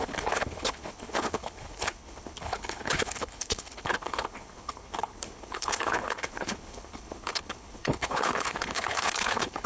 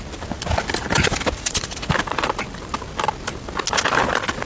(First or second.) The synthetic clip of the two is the first